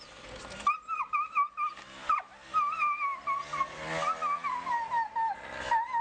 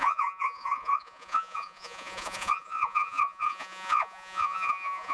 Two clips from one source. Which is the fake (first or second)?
second